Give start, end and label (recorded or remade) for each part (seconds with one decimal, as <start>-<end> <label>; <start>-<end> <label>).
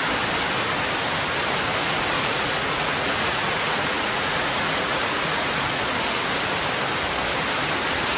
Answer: 0.0-1.8 recorded; 1.8-5.7 remade; 5.7-8.2 recorded